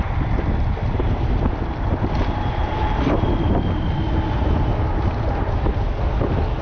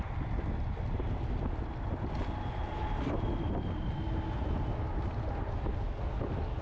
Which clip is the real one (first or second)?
second